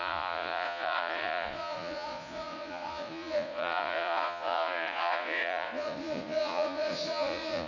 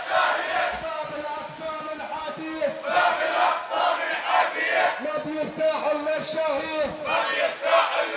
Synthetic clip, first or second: first